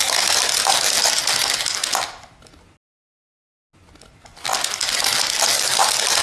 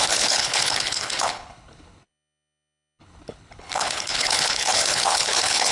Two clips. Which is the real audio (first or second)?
first